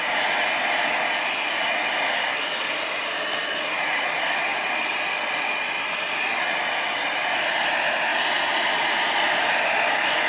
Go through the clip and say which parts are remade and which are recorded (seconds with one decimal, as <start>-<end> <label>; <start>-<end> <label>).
0.0-2.8 recorded; 2.8-3.5 remade; 3.5-8.1 recorded; 8.1-10.3 remade